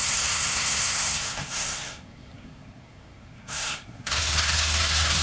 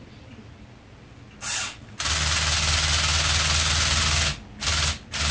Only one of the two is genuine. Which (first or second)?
second